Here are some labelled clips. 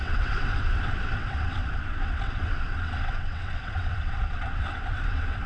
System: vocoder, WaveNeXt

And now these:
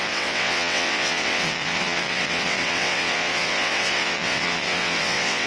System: vocoder, WaveNeXt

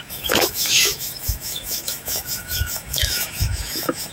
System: autoencoder, DAC-VAE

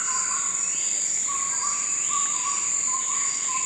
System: none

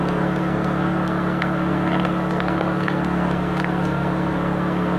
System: codec, SNAC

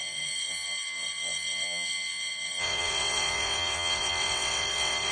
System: vocoder, WaveNeXt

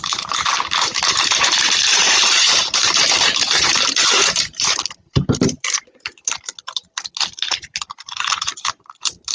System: vocoder, BigVGAN v2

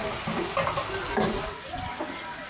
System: none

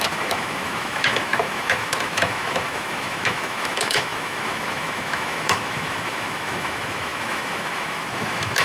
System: autoencoder, DAC-VAE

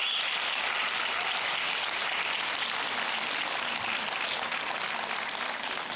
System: none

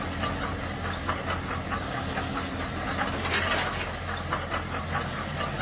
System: none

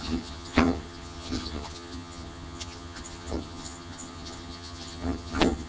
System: vocoder, HiFi-GAN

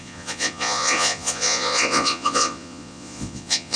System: vocoder, Vocos